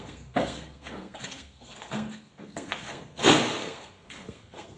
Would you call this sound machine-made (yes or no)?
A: yes